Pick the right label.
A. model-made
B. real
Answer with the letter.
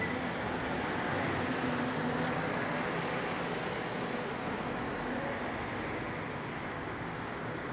B